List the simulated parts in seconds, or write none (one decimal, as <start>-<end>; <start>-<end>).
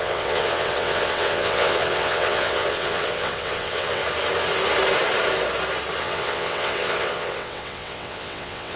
0.0-4.0; 6.0-8.8